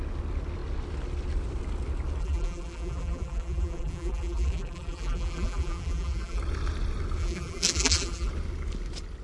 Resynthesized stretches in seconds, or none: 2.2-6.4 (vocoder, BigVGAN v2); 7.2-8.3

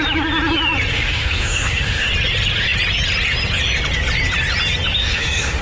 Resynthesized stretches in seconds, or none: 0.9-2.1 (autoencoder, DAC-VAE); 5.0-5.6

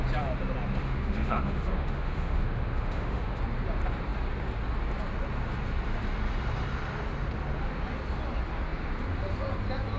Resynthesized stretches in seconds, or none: 0.8-3.4 (autoencoder, DAC-VAE)

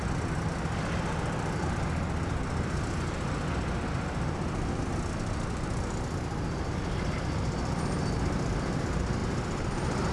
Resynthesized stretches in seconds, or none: none

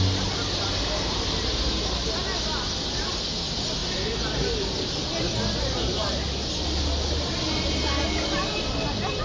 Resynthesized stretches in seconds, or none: none

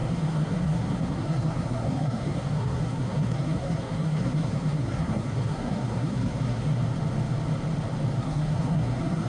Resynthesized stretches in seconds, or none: 0.0-6.8 (codec, SNAC); 8.2-9.3